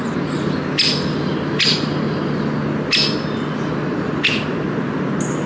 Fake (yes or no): no